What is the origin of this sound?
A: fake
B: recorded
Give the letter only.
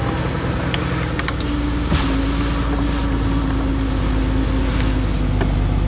B